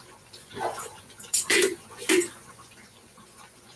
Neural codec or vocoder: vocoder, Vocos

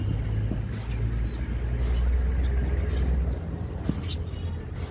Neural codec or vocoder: none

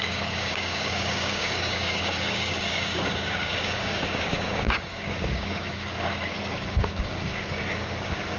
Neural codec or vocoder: codec, DAC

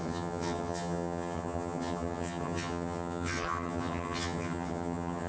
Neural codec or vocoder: vocoder, HiFi-GAN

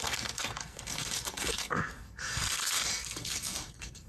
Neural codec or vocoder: codec, SNAC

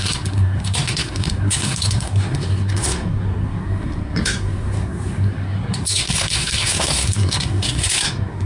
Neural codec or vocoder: codec, SNAC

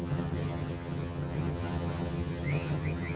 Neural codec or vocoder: vocoder, HiFi-GAN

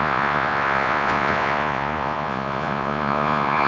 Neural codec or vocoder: vocoder, Vocos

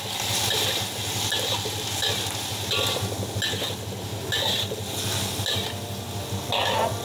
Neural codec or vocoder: none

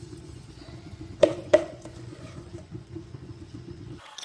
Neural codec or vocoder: vocoder, Vocos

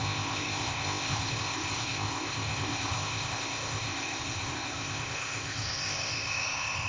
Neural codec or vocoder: codec, ZipCodec